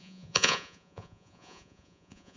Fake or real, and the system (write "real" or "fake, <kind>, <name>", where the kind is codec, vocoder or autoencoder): fake, vocoder, Vocos